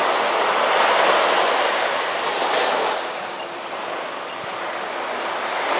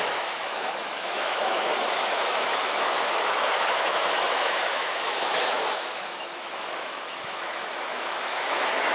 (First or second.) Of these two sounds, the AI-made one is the second